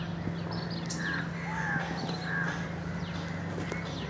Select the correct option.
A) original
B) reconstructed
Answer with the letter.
A